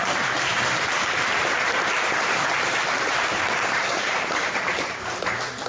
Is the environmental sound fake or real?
fake